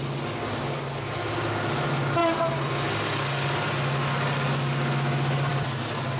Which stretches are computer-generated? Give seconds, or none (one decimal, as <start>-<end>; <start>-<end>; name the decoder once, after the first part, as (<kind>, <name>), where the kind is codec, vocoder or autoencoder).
2.2-2.7 (vocoder, BigVGAN v2)